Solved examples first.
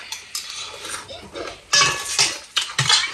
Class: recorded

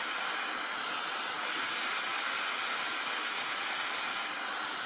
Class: recorded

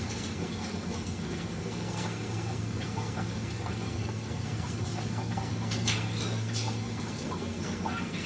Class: remade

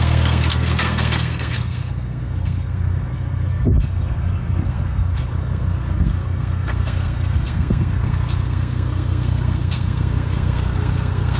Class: remade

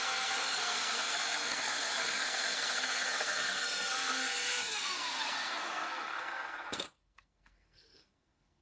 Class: remade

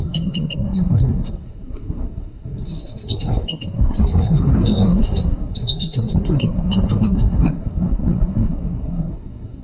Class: remade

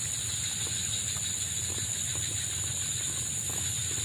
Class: recorded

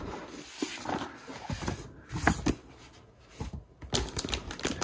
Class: recorded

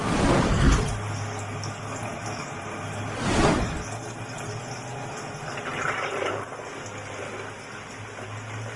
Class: recorded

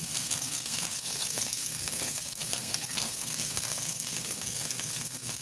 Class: remade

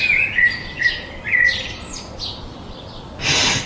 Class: recorded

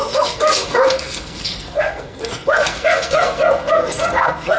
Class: remade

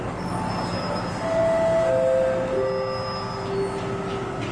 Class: recorded